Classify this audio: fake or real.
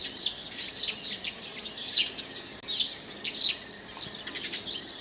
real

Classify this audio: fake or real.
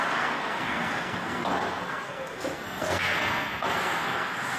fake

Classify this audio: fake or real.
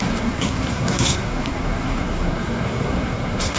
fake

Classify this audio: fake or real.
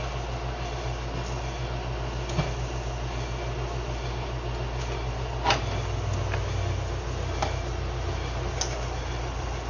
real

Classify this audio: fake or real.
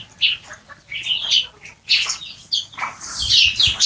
real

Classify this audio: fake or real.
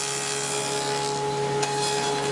real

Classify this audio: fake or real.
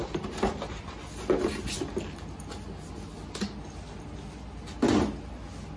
real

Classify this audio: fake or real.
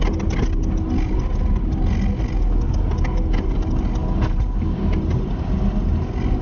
real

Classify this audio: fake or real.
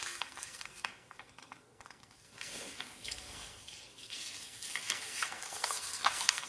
fake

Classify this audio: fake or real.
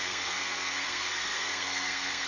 fake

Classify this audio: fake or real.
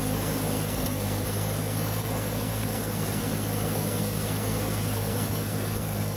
fake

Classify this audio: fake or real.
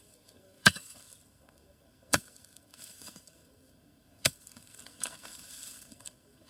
fake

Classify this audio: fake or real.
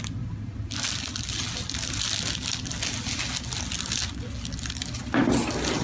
real